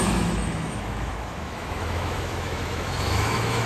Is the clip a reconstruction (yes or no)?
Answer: yes